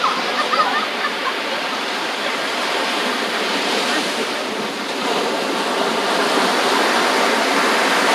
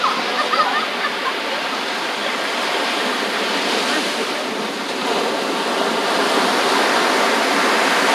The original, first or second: second